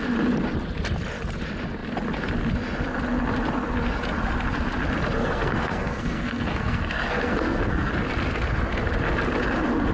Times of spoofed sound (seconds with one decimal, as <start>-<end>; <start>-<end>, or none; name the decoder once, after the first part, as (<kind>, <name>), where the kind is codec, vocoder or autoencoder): 5.2-7.9 (codec, SNAC)